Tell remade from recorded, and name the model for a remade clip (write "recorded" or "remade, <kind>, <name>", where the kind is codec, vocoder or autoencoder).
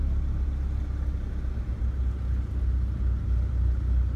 recorded